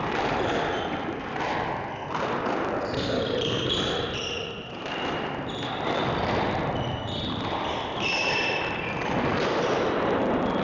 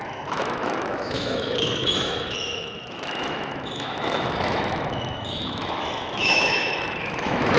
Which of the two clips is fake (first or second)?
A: second